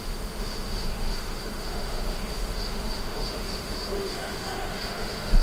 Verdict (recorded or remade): remade